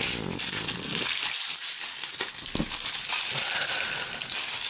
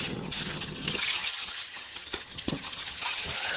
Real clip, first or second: first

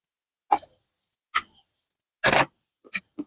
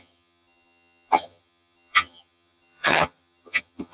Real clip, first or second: first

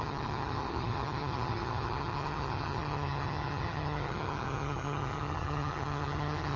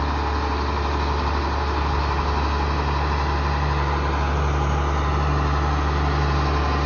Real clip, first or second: second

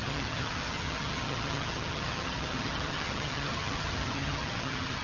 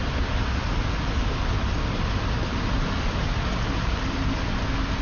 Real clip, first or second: second